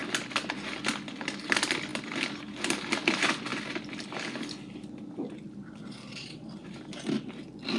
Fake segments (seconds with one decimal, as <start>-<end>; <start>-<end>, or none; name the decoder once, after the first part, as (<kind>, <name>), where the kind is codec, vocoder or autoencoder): none